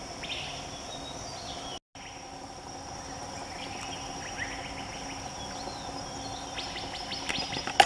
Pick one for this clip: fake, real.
real